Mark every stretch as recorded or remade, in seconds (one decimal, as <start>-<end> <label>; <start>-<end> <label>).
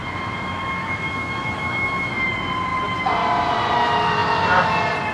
0.0-2.3 remade; 2.3-5.1 recorded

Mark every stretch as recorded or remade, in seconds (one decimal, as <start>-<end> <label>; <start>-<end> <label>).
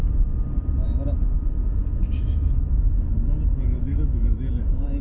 0.0-2.0 recorded; 2.0-2.6 remade; 2.6-3.8 recorded; 3.8-4.4 remade; 4.4-5.0 recorded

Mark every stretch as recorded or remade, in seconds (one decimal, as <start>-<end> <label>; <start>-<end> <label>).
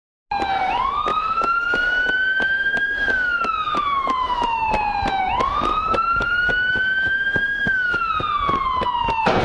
0.0-1.1 recorded; 1.1-4.7 remade; 4.7-5.7 recorded; 5.7-8.1 remade; 8.1-9.4 recorded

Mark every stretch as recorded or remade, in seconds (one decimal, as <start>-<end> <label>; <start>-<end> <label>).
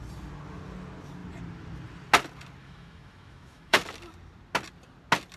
0.0-2.6 recorded; 2.6-3.8 remade; 3.8-5.4 recorded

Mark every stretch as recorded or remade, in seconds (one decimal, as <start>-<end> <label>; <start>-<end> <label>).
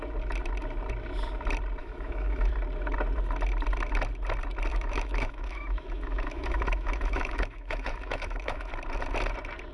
0.0-1.8 recorded; 1.8-2.5 remade; 2.5-4.7 recorded; 4.7-8.7 remade; 8.7-9.7 recorded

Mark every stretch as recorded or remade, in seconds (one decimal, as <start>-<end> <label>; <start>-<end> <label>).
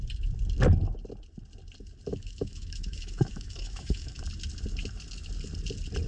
0.0-2.1 recorded; 2.1-4.2 remade; 4.2-6.1 recorded